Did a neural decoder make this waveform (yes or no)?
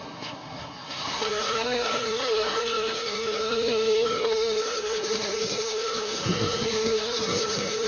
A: yes